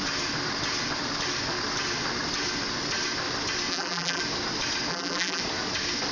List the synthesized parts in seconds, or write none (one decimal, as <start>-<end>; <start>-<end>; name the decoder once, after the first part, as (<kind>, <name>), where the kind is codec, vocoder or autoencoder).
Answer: 3.7-4.2 (vocoder, BigVGAN v2); 4.9-5.4